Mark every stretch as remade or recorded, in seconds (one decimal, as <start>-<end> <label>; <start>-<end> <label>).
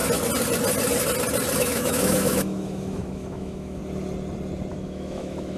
0.0-1.6 recorded; 1.6-3.8 remade; 3.8-4.7 recorded; 4.7-5.6 remade